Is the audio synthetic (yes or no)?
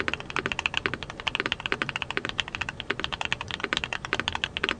yes